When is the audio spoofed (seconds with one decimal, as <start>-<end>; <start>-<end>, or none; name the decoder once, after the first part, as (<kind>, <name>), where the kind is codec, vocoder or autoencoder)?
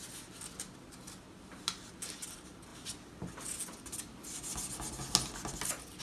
none